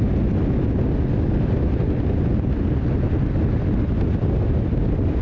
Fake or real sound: real